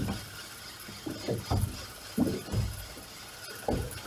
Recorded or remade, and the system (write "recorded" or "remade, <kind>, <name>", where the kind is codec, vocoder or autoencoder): recorded